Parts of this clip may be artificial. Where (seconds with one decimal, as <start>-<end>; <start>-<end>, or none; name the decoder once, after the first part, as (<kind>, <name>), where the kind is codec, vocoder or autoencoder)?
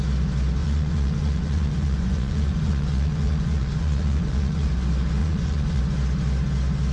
0.6-4.7 (vocoder, Vocos); 5.2-5.8